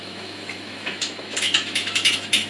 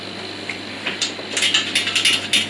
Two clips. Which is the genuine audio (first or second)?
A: second